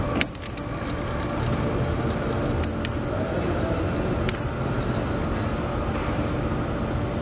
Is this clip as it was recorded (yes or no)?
yes